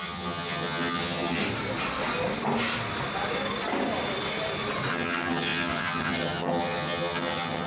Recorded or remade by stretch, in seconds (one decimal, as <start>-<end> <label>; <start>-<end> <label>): 0.0-1.4 remade; 1.4-4.9 recorded; 4.9-7.7 remade